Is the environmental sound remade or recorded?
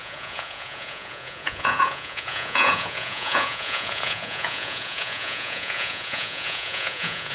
remade